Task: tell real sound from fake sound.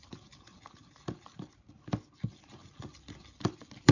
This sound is real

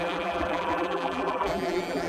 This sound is fake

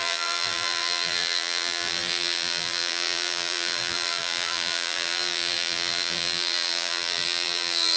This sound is fake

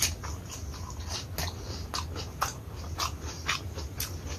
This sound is real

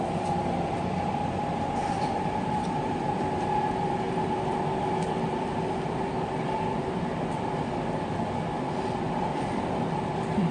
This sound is fake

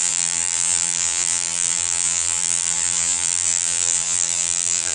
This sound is fake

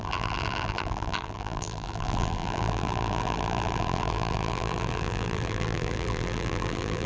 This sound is fake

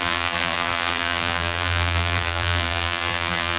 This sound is fake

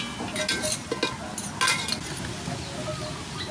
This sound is real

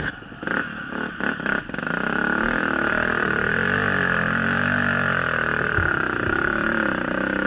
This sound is fake